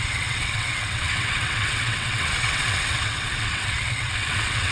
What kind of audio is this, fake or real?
fake